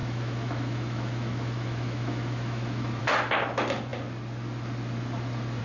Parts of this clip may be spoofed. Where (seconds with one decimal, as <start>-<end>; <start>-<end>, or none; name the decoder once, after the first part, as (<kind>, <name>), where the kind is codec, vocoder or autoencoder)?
0.0-3.0 (autoencoder, DAC-VAE)